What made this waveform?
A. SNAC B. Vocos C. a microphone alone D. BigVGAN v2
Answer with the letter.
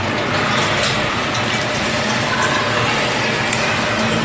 C